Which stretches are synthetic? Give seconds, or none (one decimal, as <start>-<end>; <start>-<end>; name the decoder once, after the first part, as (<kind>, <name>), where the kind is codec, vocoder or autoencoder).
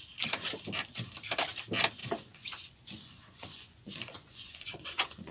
2.0-5.3 (vocoder, Vocos)